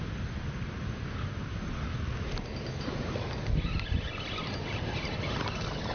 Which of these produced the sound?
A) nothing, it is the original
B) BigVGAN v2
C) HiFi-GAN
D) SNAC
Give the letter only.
A